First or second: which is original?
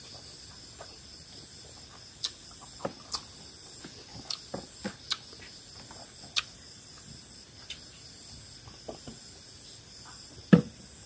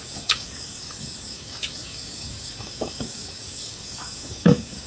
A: first